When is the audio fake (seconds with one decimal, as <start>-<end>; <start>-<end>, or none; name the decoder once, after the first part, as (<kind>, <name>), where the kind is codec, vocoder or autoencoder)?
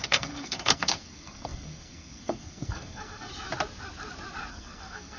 0.0-3.3 (codec, SNAC); 4.5-5.2